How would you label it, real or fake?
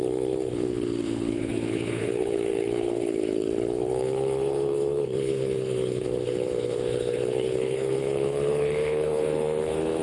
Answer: fake